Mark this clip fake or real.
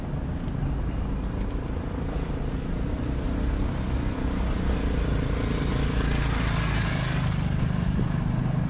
real